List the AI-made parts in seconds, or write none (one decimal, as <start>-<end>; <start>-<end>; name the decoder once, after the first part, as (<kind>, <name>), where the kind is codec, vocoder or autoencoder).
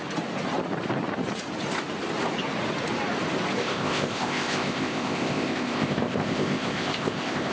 3.6-7.5 (codec, ZipCodec)